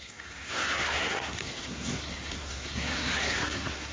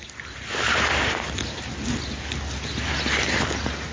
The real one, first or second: second